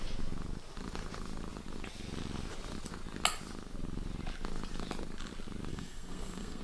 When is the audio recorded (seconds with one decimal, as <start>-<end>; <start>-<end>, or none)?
0.0-5.7